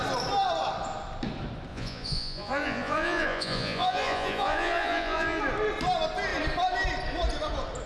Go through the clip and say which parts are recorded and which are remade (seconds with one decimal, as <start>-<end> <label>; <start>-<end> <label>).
0.0-1.7 recorded; 1.7-5.4 remade; 5.4-7.9 recorded